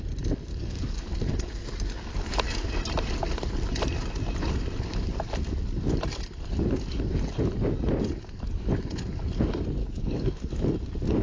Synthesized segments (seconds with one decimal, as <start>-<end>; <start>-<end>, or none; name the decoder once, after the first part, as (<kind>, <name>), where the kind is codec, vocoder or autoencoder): 0.5-1.1 (codec, DAC); 9.8-10.6